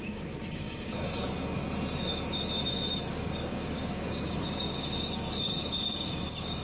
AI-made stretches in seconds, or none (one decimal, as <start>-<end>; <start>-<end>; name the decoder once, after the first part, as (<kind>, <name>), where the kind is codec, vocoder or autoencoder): 0.0-1.6 (codec, DAC); 3.1-6.6

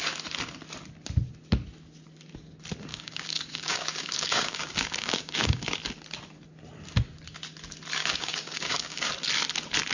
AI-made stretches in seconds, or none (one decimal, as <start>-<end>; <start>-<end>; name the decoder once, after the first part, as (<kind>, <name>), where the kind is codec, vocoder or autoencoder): 2.9-5.8 (codec, DAC); 8.0-9.1